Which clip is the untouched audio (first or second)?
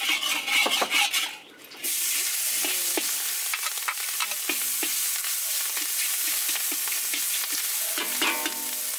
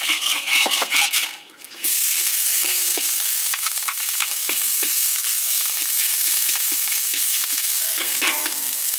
first